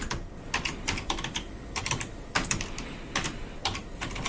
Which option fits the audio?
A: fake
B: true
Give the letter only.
A